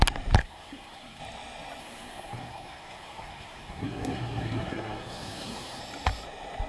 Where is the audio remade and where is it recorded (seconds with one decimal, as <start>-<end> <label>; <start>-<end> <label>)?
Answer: 0.0-0.4 recorded; 0.4-1.2 remade; 1.2-1.8 recorded; 1.8-5.8 remade; 5.8-6.7 recorded